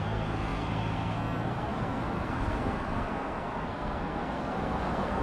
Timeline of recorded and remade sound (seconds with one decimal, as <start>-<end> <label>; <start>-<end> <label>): 0.0-5.2 remade